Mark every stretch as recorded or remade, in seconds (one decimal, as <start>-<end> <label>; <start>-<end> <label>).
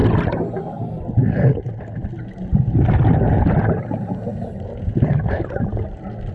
0.0-6.3 recorded